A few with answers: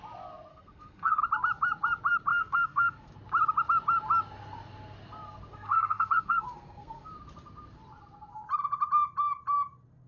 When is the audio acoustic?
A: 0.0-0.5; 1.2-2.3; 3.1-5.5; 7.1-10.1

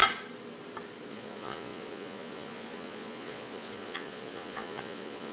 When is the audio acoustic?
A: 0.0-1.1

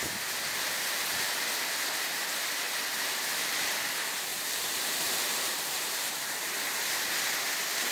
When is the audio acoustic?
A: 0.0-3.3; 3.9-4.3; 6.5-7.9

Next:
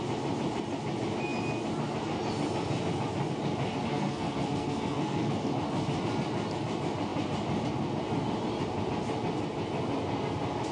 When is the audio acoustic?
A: 0.0-3.9; 5.5-10.7